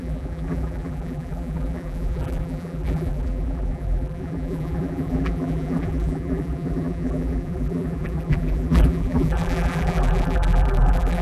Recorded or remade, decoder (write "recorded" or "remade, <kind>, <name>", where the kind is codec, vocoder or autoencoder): remade, vocoder, BigVGAN v2